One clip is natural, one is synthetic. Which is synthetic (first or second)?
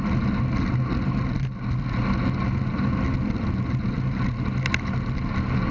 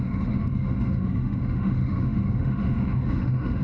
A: second